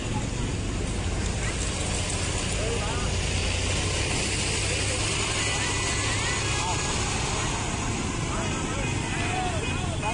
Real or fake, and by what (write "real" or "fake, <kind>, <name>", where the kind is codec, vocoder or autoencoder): real